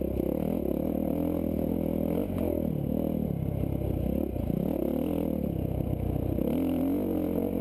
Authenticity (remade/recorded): recorded